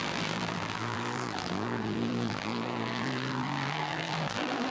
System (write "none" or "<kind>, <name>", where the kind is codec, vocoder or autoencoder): vocoder, BigVGAN v2